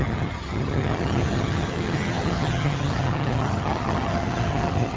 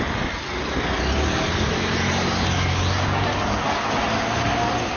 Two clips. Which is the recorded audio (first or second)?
second